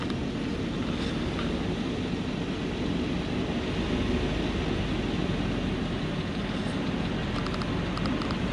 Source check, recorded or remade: recorded